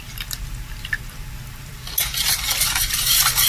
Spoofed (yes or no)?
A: no